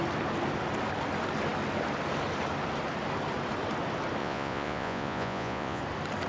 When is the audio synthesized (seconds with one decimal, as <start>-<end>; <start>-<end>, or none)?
4.2-5.8